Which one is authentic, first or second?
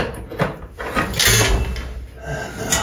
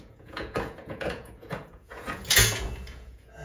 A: first